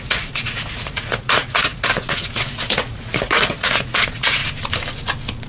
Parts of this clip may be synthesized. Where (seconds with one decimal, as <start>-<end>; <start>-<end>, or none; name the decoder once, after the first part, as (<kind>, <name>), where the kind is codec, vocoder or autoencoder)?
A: 0.0-4.4 (vocoder, Vocos)